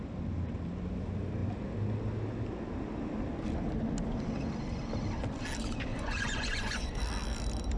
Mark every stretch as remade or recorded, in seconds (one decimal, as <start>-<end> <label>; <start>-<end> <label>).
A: 0.0-5.9 recorded; 5.9-7.0 remade; 7.0-7.8 recorded